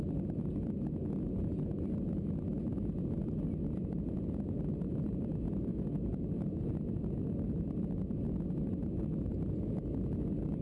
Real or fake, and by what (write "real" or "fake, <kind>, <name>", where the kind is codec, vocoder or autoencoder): real